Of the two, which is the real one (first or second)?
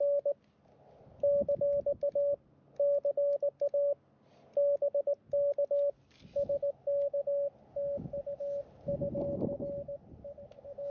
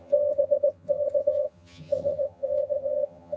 first